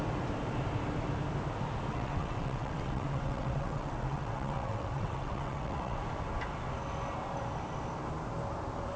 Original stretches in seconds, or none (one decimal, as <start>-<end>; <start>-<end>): 0.0-1.9; 6.0-9.0